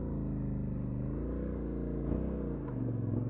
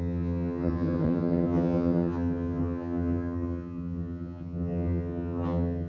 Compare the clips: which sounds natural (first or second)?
first